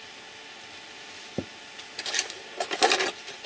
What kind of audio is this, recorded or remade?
recorded